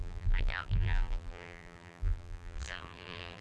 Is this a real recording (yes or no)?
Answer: no